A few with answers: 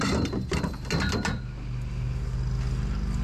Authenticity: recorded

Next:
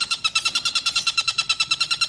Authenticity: recorded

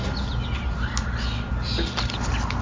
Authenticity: recorded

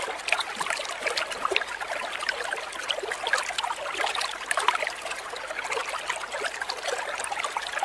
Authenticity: recorded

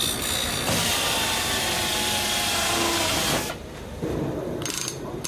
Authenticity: recorded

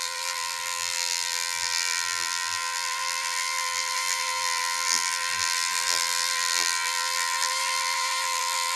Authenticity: remade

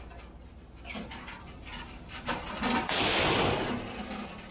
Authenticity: recorded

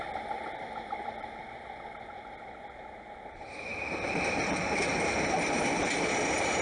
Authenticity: remade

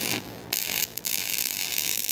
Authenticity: remade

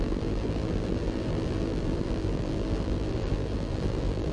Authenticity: remade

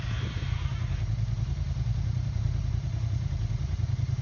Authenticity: remade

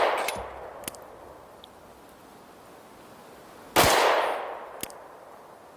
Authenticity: recorded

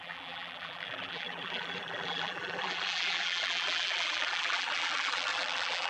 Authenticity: remade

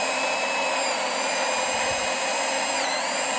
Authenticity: remade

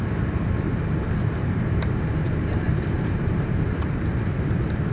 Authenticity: remade